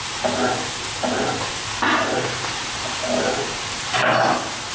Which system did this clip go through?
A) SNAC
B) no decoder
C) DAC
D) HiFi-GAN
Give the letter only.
B